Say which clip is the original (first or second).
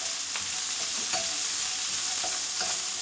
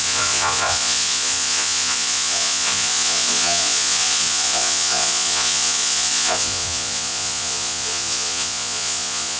first